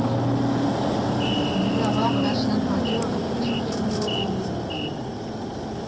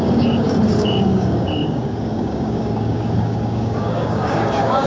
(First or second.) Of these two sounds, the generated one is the second